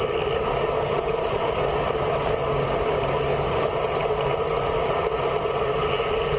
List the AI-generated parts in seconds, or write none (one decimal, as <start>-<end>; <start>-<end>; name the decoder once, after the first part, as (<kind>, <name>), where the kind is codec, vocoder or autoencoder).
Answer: none